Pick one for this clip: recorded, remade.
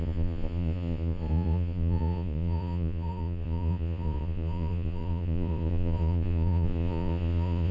remade